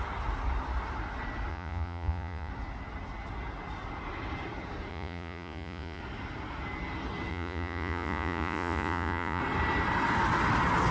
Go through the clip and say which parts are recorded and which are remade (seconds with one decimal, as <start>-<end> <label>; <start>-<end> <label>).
0.0-1.5 recorded; 1.5-2.5 remade; 2.5-4.9 recorded; 4.9-6.0 remade; 6.0-7.3 recorded; 7.3-9.4 remade; 9.4-10.9 recorded